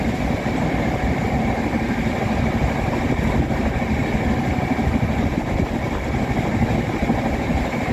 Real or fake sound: real